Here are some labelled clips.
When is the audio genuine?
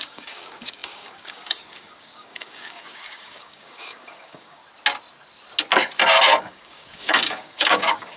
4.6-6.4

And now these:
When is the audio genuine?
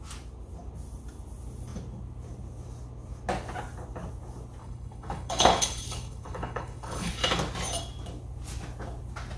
0.0-4.6; 7.1-9.4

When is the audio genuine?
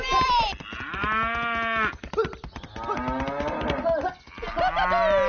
0.0-5.3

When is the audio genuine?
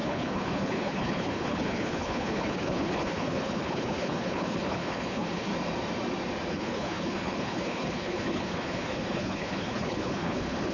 5.5-6.5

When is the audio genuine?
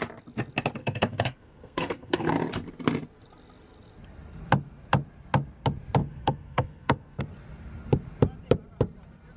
0.0-0.8; 2.3-6.0; 7.2-9.4